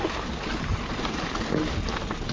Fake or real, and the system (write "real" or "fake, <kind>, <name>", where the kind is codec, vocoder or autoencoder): real